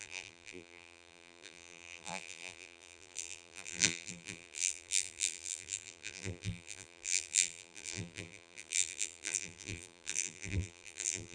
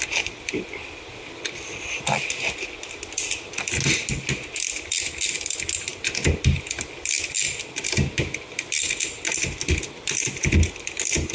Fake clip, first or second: first